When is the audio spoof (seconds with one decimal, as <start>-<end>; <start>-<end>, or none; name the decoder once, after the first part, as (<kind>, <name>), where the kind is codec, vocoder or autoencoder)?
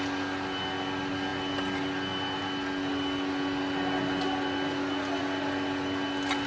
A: none